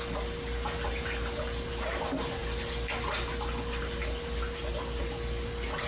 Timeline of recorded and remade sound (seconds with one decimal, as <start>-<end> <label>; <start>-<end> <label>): 0.0-5.9 recorded

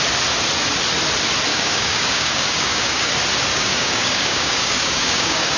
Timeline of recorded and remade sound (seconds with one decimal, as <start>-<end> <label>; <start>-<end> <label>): 0.0-1.5 recorded; 1.5-3.1 remade; 3.1-3.5 recorded; 3.5-5.6 remade

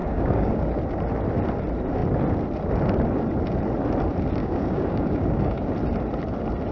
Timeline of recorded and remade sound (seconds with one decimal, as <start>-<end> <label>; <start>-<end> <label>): 0.0-0.6 remade; 0.6-4.4 recorded; 4.4-5.7 remade; 5.7-6.7 recorded

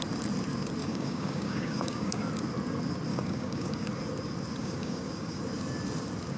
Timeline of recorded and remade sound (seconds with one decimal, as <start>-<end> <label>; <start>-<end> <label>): 0.0-0.8 recorded; 0.8-2.2 remade; 2.2-3.1 recorded; 3.1-3.9 remade; 3.9-4.6 recorded; 4.6-5.4 remade; 5.4-6.4 recorded